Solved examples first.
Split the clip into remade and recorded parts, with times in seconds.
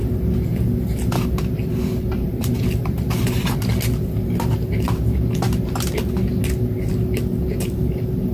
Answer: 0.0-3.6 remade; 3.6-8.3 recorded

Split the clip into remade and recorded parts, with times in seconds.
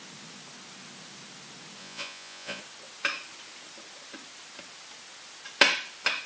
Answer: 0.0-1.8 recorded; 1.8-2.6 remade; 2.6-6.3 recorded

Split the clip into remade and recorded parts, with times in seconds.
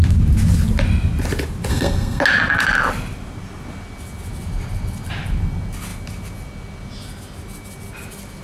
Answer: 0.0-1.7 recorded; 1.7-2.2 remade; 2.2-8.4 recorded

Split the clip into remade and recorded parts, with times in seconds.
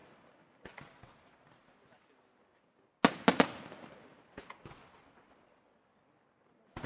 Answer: 0.0-6.9 recorded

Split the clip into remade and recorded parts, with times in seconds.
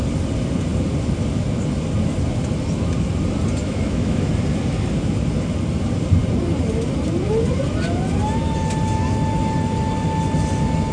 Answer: 0.0-3.6 recorded; 3.6-4.3 remade; 4.3-10.9 recorded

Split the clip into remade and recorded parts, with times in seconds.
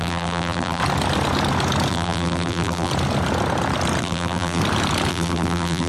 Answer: 0.0-0.8 remade; 0.8-1.9 recorded; 1.9-2.9 remade; 2.9-4.0 recorded; 4.0-4.6 remade; 4.6-5.1 recorded; 5.1-5.9 remade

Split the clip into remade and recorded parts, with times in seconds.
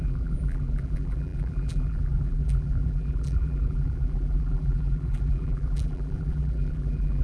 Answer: 0.0-7.2 remade